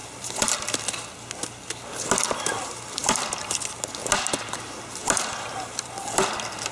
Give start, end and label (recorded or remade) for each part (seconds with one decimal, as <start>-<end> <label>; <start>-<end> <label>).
0.0-0.5 remade; 0.5-3.0 recorded; 3.0-3.6 remade; 3.6-5.0 recorded; 5.0-6.3 remade; 6.3-6.7 recorded